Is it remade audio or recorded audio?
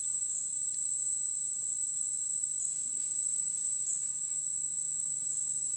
remade